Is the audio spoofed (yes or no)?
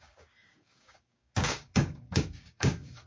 yes